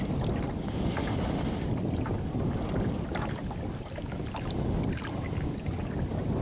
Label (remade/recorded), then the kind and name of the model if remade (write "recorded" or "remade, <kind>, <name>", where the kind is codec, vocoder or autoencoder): recorded